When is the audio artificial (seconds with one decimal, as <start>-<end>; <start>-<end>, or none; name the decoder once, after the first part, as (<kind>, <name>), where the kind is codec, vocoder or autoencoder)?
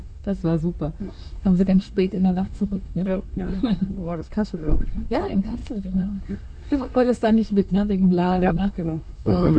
0.0-0.4 (codec, SNAC); 1.0-9.6